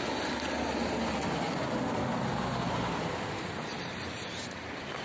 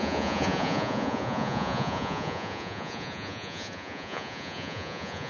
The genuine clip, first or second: first